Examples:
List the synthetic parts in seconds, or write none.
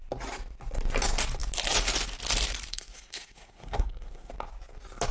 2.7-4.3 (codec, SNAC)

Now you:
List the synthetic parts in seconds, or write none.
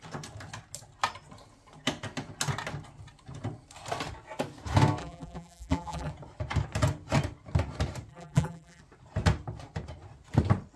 5.0-6.1 (vocoder, BigVGAN v2); 8.1-8.8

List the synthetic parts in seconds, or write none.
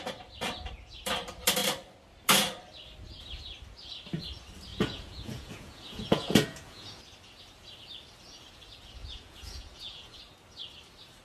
4.7-6.9 (vocoder, Vocos); 9.0-10.2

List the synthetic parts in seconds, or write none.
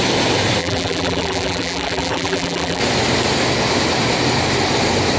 0.6-2.8 (vocoder, BigVGAN v2)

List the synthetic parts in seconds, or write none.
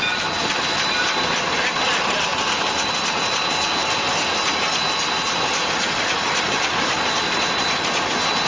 none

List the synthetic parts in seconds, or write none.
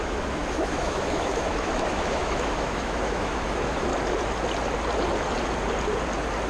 0.0-3.9 (autoencoder, DAC-VAE)